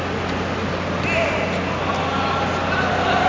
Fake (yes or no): no